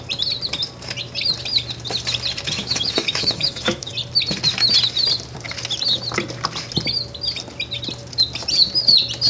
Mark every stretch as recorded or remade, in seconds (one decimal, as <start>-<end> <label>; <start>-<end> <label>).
0.0-2.6 recorded; 2.6-3.9 remade; 3.9-9.3 recorded